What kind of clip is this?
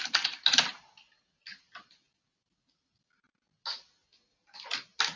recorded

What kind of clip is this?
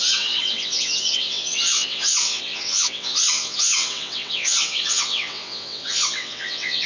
remade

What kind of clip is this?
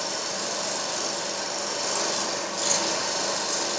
remade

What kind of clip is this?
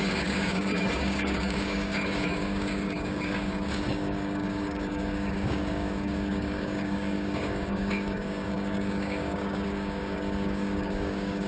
remade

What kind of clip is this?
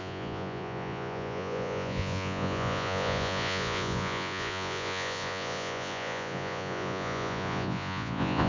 remade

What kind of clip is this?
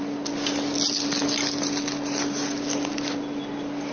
recorded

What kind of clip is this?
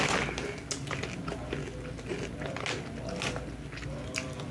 recorded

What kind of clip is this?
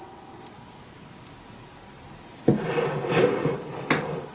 recorded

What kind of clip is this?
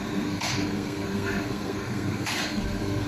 remade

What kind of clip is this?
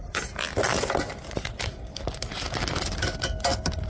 recorded